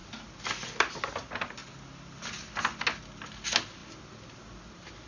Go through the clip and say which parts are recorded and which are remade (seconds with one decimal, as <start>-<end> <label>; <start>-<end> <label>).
0.0-5.1 recorded